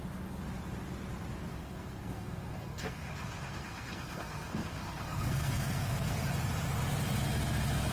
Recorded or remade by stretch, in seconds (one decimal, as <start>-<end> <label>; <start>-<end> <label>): 0.0-1.5 recorded; 1.5-6.2 remade; 6.2-7.9 recorded